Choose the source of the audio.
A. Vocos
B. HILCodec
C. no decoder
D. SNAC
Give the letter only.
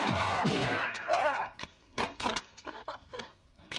D